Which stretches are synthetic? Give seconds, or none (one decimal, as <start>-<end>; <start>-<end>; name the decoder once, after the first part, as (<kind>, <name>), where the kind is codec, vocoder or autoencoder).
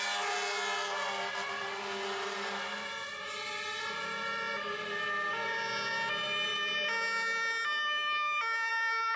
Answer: none